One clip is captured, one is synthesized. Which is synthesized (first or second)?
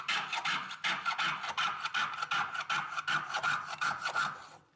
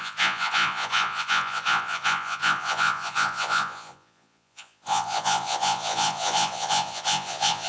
second